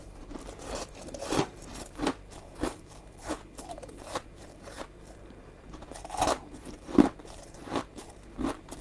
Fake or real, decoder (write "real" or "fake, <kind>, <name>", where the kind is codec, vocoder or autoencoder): fake, vocoder, BigVGAN v2